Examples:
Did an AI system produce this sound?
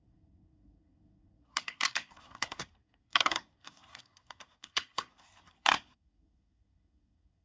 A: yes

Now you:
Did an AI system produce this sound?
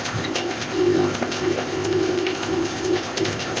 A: yes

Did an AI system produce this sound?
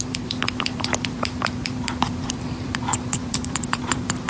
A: yes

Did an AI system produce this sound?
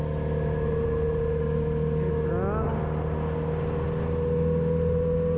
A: no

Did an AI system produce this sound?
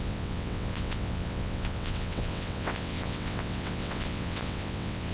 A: yes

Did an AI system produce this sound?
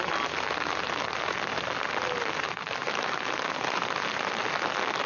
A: no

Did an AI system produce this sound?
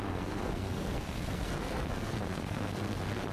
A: yes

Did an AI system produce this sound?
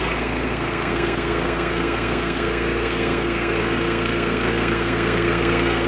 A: yes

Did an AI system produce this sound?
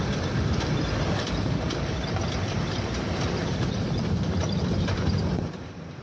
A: yes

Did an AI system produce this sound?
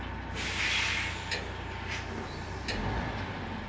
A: no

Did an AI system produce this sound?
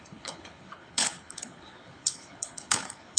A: yes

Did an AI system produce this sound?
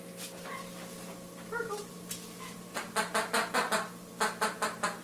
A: no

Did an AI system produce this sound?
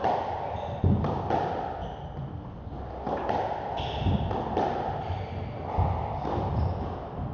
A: no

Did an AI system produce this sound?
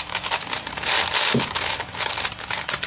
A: no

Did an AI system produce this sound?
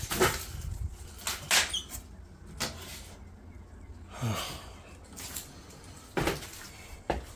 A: no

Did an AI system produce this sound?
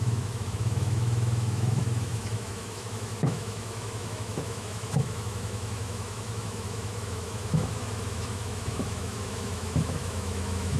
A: yes